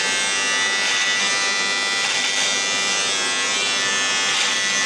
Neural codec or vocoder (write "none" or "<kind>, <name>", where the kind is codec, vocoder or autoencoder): none